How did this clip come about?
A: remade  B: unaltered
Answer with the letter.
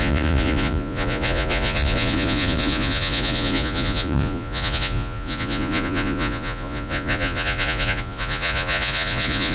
A